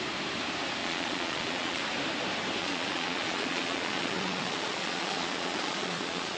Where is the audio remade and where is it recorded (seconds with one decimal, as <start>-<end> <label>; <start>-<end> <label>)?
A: 0.0-0.8 recorded; 0.8-1.8 remade; 1.8-2.6 recorded; 2.6-6.4 remade